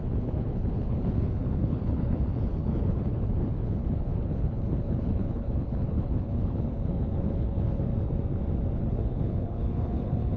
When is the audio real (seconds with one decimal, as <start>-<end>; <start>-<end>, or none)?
7.9-8.8